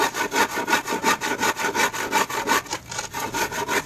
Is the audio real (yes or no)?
yes